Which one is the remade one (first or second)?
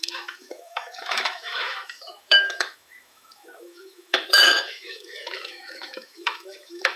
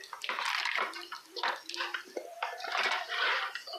first